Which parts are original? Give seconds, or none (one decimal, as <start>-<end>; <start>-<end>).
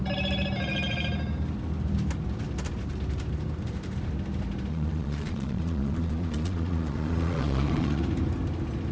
0.0-4.7; 8.0-8.9